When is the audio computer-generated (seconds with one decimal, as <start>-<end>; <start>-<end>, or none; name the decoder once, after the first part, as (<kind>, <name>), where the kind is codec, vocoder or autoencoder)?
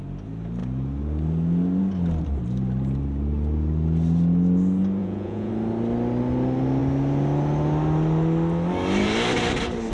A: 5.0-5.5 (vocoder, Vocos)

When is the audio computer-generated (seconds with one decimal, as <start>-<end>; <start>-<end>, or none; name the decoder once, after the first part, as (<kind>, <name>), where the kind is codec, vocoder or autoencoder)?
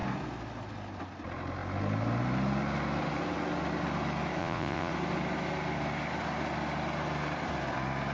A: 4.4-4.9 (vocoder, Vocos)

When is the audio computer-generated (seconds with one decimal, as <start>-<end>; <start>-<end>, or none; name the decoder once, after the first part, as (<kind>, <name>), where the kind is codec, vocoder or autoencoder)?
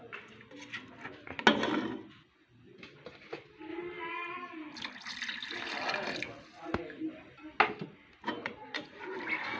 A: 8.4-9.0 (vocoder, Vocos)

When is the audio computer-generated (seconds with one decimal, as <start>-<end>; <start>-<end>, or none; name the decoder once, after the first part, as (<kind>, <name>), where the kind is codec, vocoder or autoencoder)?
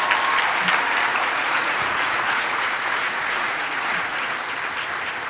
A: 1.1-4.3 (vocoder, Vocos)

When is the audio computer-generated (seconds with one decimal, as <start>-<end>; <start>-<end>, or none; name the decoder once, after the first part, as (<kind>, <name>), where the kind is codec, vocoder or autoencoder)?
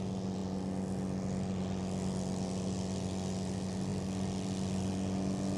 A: none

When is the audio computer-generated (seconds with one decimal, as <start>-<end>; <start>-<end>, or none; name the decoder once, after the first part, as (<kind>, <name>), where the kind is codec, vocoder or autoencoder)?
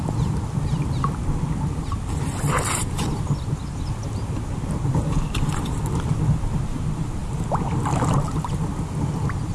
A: none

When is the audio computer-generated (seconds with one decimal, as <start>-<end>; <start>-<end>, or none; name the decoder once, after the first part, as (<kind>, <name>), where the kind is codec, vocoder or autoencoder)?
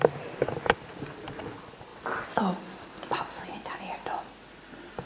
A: none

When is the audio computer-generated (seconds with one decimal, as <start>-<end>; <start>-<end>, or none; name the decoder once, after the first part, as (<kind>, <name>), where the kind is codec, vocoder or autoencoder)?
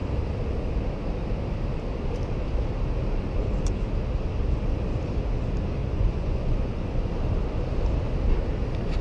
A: 5.8-7.1 (vocoder, Vocos)